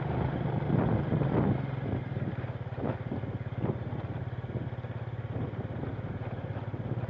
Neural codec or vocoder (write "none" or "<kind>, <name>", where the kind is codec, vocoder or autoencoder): none